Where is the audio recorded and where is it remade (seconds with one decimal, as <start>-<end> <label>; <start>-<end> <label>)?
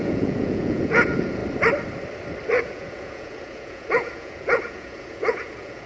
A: 0.0-1.4 remade; 1.4-2.6 recorded; 2.6-5.9 remade